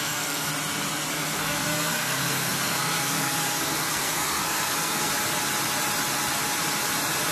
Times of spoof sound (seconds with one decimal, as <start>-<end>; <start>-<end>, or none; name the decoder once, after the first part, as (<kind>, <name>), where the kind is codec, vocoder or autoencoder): 0.0-0.5 (codec, SNAC); 1.1-5.1